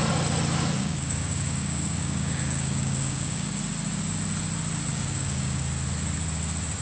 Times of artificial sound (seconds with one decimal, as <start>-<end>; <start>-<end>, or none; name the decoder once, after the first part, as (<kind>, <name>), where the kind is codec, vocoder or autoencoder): 0.8-3.6 (codec, DAC); 4.9-5.6